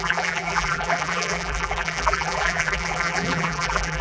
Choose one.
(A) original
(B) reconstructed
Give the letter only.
B